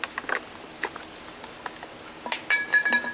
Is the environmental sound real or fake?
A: real